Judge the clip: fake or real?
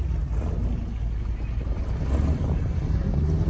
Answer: real